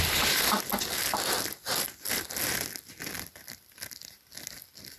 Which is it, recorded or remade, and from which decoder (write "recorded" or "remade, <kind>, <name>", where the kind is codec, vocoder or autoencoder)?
recorded